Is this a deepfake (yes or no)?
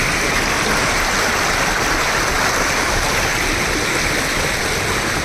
no